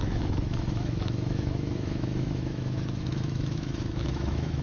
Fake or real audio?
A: fake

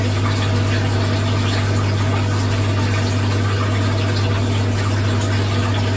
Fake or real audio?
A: real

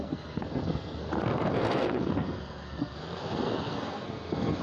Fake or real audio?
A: fake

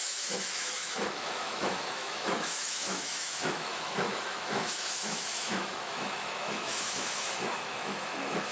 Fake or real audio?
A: fake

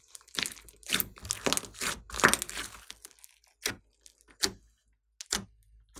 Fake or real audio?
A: real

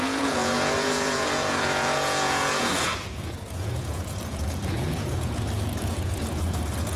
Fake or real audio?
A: fake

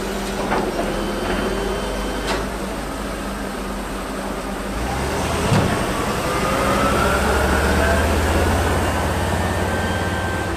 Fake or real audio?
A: real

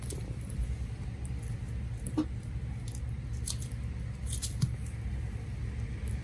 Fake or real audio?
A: real